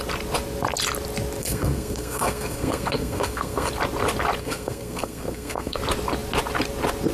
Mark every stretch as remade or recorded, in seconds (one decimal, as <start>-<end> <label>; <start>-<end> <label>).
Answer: 0.0-1.4 recorded; 1.4-3.7 remade; 3.7-4.4 recorded; 4.4-5.8 remade; 5.8-7.1 recorded